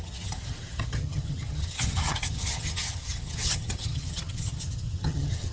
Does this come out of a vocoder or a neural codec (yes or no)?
yes